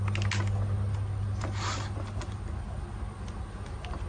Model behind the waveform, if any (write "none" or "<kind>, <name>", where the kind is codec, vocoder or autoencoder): none